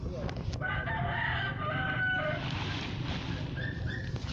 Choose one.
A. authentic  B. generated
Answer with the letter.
A